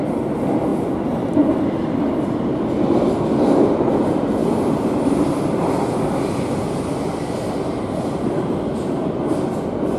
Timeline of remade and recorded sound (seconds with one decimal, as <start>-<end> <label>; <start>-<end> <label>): 0.0-0.7 recorded; 0.7-2.2 remade; 2.2-4.4 recorded; 4.4-8.7 remade; 8.7-10.0 recorded